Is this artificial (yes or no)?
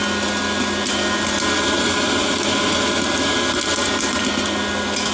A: no